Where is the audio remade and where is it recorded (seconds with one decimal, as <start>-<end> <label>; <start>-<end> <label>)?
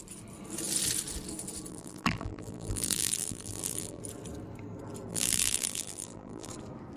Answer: 0.0-1.7 recorded; 1.7-4.0 remade; 4.0-5.1 recorded; 5.1-6.5 remade; 6.5-7.0 recorded